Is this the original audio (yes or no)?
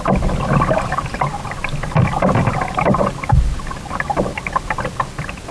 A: yes